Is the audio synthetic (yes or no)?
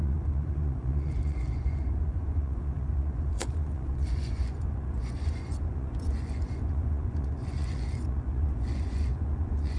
yes